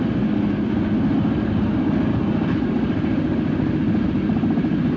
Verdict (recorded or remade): recorded